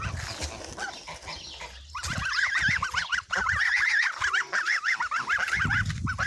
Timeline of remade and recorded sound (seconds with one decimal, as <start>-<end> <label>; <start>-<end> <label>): 0.0-6.3 recorded